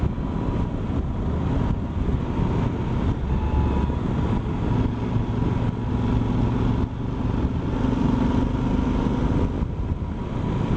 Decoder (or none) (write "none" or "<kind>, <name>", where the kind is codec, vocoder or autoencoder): none